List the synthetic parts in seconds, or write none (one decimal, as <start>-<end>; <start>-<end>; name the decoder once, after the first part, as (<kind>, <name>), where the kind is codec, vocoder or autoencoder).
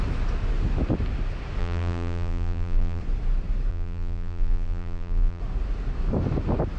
1.6-3.0 (vocoder, BigVGAN v2); 3.7-5.4